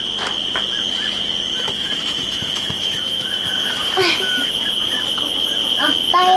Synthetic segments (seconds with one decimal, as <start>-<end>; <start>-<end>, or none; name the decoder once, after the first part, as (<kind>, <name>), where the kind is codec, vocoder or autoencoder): 1.5-4.5 (autoencoder, DAC-VAE)